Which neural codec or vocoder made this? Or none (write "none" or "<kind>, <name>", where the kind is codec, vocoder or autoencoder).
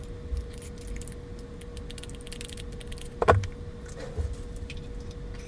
none